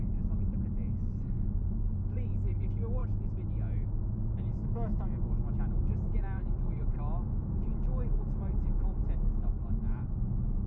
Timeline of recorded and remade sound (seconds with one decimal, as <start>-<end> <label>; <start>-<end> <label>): 0.0-4.9 recorded; 4.9-5.5 remade; 5.5-10.7 recorded